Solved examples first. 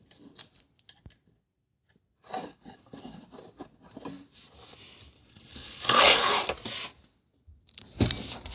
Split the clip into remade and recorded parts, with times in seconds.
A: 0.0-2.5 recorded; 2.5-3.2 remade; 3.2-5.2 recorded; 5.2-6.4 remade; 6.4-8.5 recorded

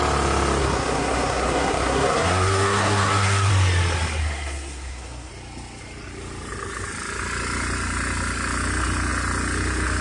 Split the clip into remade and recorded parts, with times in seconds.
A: 0.0-0.6 recorded; 0.6-3.5 remade; 3.5-4.2 recorded; 4.2-5.3 remade; 5.3-10.0 recorded

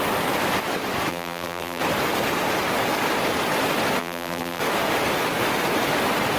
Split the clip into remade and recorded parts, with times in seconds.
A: 0.0-1.1 recorded; 1.1-1.8 remade; 1.8-4.0 recorded; 4.0-4.6 remade; 4.6-6.4 recorded

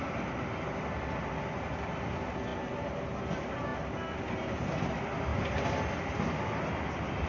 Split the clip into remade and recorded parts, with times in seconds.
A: 0.0-7.3 recorded

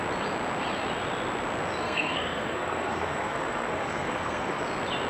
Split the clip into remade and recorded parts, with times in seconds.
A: 0.0-1.8 recorded; 1.8-4.6 remade; 4.6-5.1 recorded